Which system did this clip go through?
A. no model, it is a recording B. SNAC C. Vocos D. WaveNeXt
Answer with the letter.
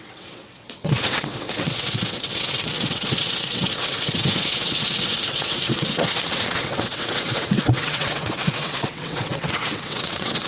D